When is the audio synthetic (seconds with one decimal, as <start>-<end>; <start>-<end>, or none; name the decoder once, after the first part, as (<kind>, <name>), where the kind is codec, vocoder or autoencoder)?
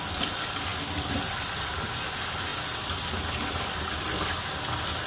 none